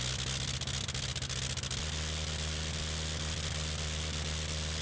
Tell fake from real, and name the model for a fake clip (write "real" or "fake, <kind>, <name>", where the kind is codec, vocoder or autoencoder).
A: real